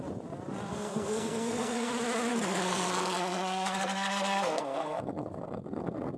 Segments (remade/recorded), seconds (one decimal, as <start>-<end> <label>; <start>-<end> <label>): 0.0-0.7 recorded; 0.7-1.9 remade; 1.9-2.3 recorded; 2.3-6.2 remade